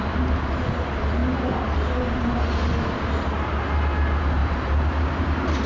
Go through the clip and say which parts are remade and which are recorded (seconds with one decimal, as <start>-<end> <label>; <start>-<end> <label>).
0.0-5.7 recorded